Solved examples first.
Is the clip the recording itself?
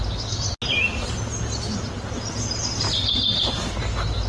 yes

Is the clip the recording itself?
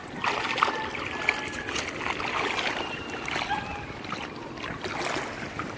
yes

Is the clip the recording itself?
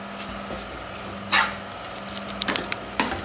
yes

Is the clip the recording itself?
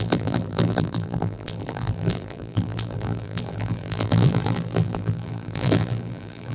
no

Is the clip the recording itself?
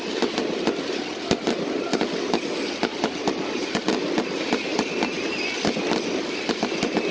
no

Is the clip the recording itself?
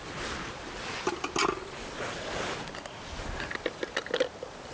yes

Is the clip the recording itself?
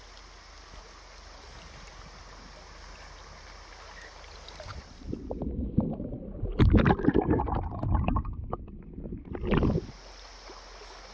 yes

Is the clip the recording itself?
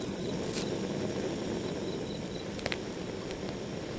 yes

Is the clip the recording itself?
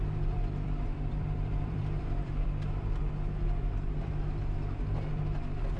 no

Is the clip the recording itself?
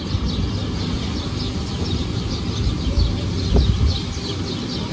yes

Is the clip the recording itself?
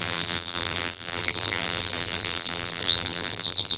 no